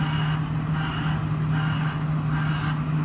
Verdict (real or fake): real